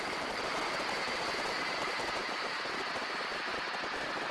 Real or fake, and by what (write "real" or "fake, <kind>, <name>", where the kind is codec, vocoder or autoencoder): fake, vocoder, BigVGAN v2